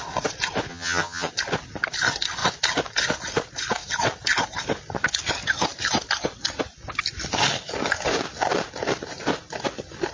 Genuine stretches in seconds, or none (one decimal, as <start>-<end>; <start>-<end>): 0.0-0.7; 1.3-10.1